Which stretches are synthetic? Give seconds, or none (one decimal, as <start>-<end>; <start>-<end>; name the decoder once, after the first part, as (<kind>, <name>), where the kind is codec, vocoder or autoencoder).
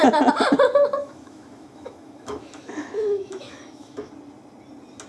1.0-4.1 (autoencoder, DAC-VAE)